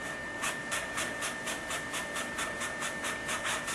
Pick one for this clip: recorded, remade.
recorded